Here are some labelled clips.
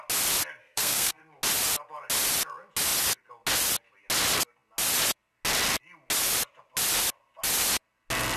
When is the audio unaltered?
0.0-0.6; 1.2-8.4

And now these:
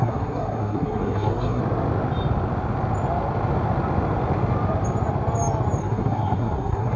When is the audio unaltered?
1.6-5.8

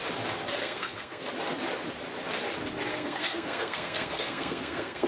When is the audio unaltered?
0.0-0.6; 1.3-2.9

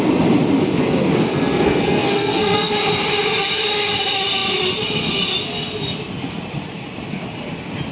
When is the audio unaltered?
0.0-1.3; 2.7-7.9

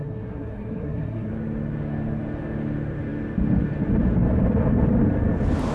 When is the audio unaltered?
1.3-5.7

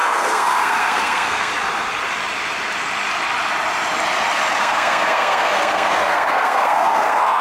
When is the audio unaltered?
1.5-4.6

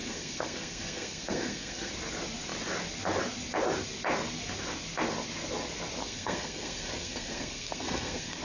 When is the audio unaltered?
1.9-6.0